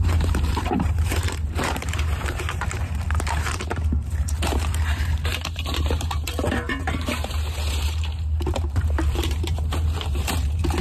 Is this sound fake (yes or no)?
yes